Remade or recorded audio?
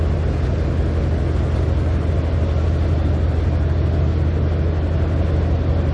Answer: recorded